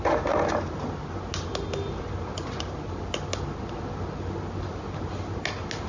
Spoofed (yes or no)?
no